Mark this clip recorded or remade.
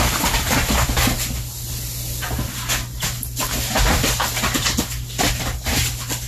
recorded